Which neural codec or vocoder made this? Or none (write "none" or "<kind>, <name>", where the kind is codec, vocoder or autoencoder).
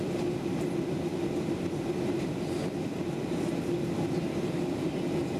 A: vocoder, BigVGAN v2